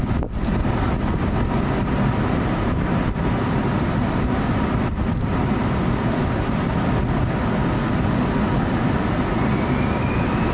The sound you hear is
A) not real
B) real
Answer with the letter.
B